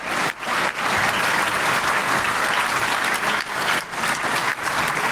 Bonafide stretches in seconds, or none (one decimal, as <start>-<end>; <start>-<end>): 0.0-2.0; 2.5-3.5; 4.0-5.1